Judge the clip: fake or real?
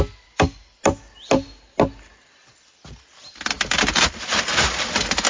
real